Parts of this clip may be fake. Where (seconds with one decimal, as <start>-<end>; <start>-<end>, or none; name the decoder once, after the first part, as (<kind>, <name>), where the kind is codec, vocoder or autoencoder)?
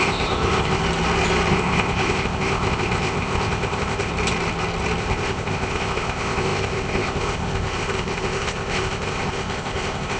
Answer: 0.0-0.8 (codec, ZipCodec); 1.5-4.1; 5.0-10.2